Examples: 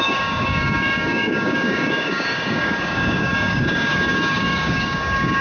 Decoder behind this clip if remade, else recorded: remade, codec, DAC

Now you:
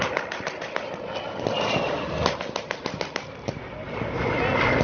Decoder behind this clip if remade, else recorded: recorded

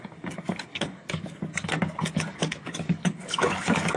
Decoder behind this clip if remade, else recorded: remade, codec, DAC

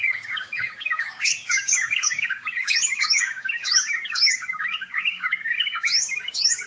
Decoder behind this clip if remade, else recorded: remade, codec, DAC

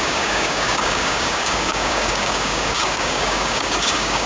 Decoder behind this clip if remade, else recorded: remade, codec, DAC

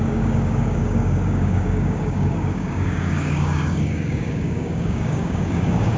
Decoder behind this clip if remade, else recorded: remade, codec, DAC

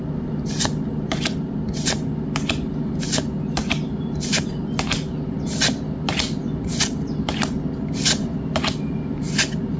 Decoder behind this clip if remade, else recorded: recorded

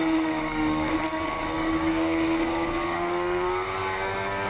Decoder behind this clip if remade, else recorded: remade, codec, DAC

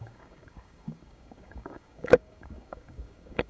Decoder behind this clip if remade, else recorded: remade, codec, DAC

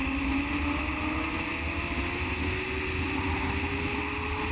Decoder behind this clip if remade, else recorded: recorded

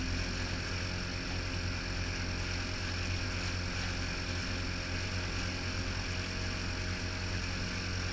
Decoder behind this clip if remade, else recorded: recorded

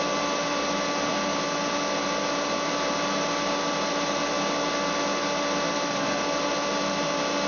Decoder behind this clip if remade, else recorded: recorded